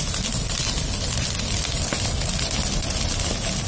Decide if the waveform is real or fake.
real